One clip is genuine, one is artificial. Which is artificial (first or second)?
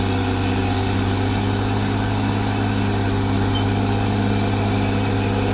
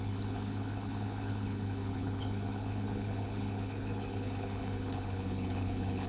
second